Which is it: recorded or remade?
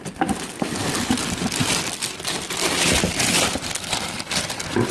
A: recorded